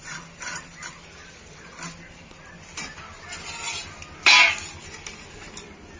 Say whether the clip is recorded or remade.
recorded